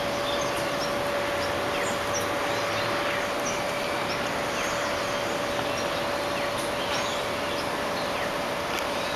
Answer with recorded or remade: recorded